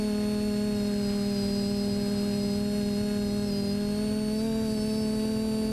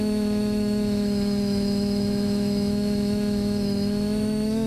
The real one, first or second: first